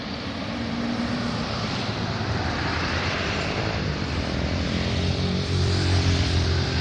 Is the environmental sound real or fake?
fake